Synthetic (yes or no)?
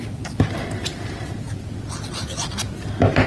no